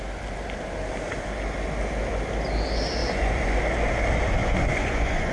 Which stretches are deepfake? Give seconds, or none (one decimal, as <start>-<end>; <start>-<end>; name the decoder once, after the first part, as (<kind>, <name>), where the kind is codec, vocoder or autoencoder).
3.0-3.6 (vocoder, Vocos); 4.4-5.3